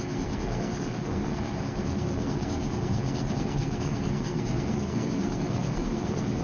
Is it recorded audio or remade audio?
remade